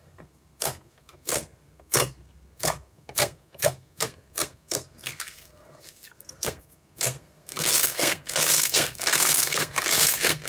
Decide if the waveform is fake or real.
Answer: fake